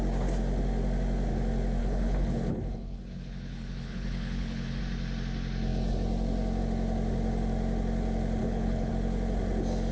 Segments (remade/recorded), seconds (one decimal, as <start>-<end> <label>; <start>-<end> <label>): 0.0-1.8 recorded; 1.8-4.8 remade; 4.8-8.4 recorded; 8.4-8.9 remade; 8.9-9.9 recorded